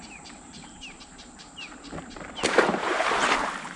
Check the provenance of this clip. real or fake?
fake